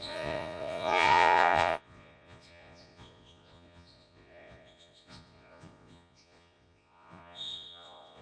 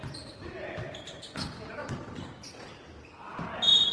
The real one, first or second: second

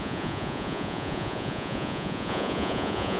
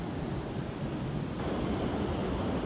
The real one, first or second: second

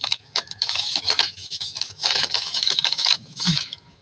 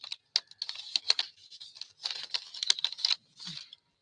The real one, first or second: second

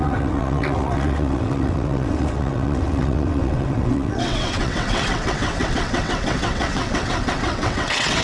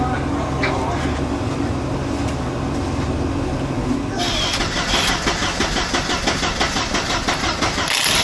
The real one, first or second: second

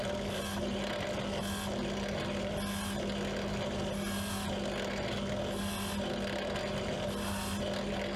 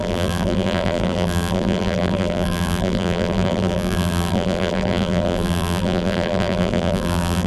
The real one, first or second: first